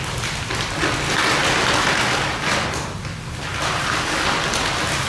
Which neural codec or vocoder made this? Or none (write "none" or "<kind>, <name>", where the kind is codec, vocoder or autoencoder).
none